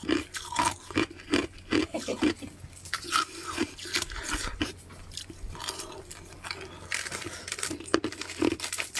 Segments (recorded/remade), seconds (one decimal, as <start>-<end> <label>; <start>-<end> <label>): 0.0-9.0 recorded